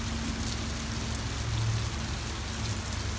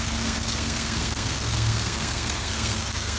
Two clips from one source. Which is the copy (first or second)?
second